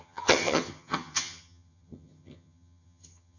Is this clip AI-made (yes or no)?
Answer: yes